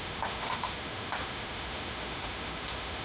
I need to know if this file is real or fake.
fake